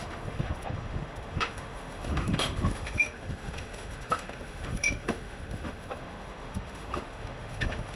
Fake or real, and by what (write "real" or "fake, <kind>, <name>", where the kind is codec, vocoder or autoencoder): fake, autoencoder, DAC-VAE